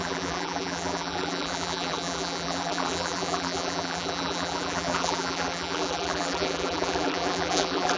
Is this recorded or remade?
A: remade